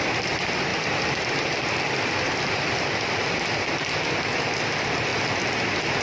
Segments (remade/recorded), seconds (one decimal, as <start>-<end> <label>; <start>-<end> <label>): 0.0-0.7 recorded; 0.7-3.3 remade; 3.3-5.1 recorded; 5.1-6.0 remade